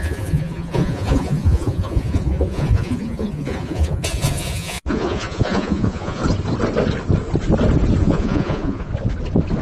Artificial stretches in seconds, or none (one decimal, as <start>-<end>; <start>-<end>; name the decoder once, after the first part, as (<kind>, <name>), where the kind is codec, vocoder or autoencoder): 0.0-6.2 (vocoder, Vocos); 8.0-8.9